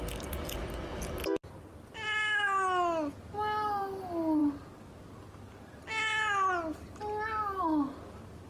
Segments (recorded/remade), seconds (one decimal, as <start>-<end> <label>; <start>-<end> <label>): 0.0-8.5 recorded

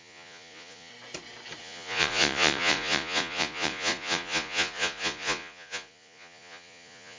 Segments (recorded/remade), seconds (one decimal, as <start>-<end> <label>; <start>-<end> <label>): 0.0-0.9 remade; 0.9-1.6 recorded; 1.6-7.2 remade

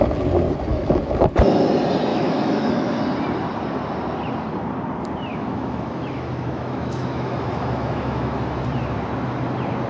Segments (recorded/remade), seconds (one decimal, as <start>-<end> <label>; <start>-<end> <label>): 0.0-0.7 recorded; 0.7-1.3 remade; 1.3-2.1 recorded; 2.1-3.0 remade; 3.0-5.3 recorded; 5.3-8.6 remade; 8.6-9.9 recorded

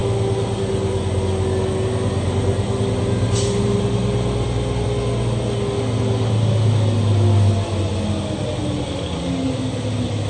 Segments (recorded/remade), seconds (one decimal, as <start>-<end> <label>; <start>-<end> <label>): 0.0-10.3 recorded

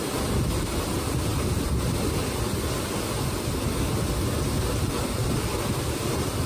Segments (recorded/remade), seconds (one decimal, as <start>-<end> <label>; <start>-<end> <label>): 0.0-1.3 remade; 1.3-4.5 recorded; 4.5-6.5 remade